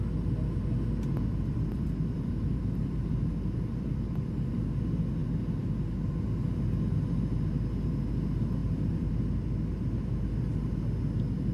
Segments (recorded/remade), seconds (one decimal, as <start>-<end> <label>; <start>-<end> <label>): 0.0-1.3 recorded; 1.3-4.5 remade; 4.5-8.6 recorded; 8.6-9.1 remade; 9.1-11.5 recorded